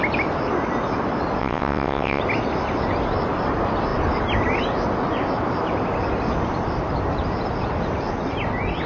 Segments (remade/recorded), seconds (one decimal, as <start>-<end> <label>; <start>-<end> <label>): 0.0-1.4 recorded; 1.4-2.2 remade; 2.2-8.9 recorded